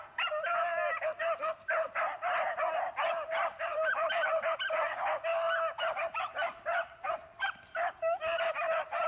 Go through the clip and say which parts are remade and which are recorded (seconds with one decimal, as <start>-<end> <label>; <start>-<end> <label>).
0.0-3.7 recorded; 3.7-4.6 remade; 4.6-5.3 recorded; 5.3-7.5 remade; 7.5-8.3 recorded; 8.3-9.1 remade